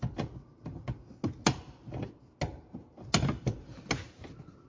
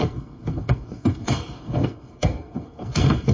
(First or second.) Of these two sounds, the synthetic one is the second